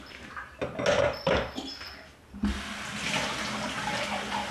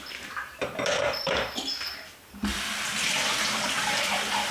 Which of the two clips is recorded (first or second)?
first